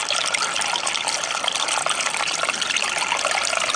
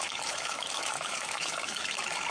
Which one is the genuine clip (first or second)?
first